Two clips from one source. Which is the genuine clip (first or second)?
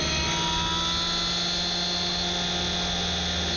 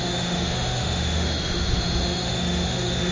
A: first